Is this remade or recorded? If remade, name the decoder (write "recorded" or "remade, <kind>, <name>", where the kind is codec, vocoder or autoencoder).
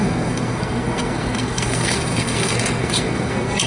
remade, codec, SNAC